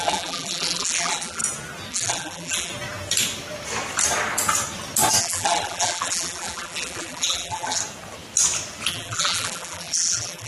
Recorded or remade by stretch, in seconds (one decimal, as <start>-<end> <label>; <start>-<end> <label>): 0.0-1.4 remade; 1.4-1.9 recorded; 1.9-2.7 remade; 2.7-5.2 recorded; 5.2-7.8 remade; 7.8-8.9 recorded; 8.9-10.5 remade

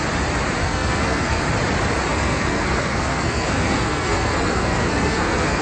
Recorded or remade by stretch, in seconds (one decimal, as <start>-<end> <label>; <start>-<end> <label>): 0.0-0.6 recorded; 0.6-1.4 remade; 1.4-2.1 recorded; 2.1-5.6 remade